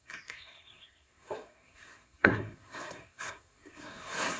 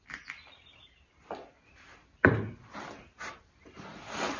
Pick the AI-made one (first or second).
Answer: first